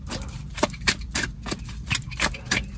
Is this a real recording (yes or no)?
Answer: yes